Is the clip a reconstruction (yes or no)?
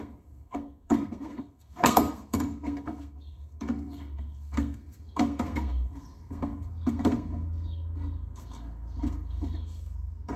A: yes